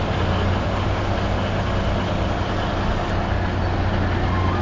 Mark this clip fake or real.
real